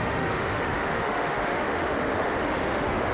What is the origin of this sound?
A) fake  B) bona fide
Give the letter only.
A